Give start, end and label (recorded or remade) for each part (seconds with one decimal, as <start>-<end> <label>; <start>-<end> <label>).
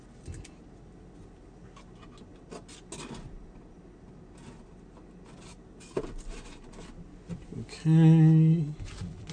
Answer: 0.0-9.3 recorded